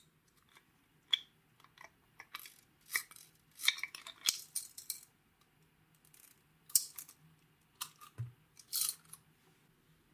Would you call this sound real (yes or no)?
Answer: yes